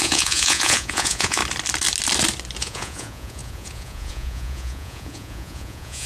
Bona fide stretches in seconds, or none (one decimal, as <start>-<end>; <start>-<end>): 1.4-2.6